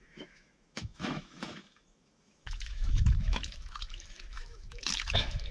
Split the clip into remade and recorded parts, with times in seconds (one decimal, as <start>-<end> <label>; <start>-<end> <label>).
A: 0.0-5.5 remade